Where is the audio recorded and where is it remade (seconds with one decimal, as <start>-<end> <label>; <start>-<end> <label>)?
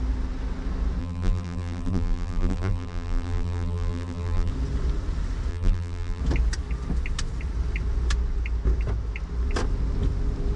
0.0-1.0 recorded; 1.0-4.5 remade; 4.5-5.5 recorded; 5.5-6.2 remade; 6.2-10.6 recorded